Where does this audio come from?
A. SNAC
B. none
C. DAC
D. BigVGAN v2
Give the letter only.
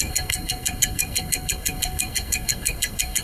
A